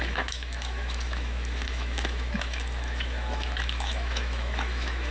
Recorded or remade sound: remade